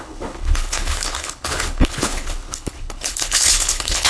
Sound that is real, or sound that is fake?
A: fake